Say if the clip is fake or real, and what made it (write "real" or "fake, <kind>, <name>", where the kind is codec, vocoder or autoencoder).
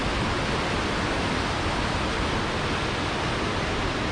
real